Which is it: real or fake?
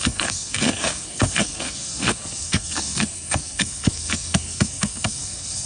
fake